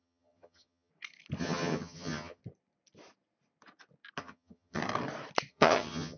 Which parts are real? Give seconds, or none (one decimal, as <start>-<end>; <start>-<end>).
0.9-1.4; 2.4-4.2; 4.8-5.5